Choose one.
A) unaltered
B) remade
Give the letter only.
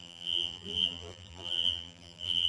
B